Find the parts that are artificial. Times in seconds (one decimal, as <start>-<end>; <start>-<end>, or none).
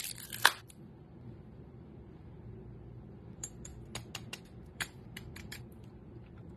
0.0-3.7; 4.4-6.6